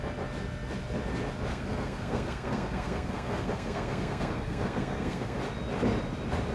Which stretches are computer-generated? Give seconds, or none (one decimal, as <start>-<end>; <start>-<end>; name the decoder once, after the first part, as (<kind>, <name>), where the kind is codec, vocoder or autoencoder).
1.5-5.4 (codec, SNAC)